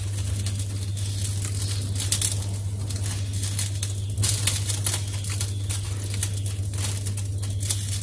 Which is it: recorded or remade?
recorded